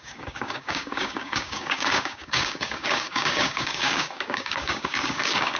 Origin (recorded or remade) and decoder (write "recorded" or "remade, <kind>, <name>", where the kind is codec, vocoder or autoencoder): remade, codec, DAC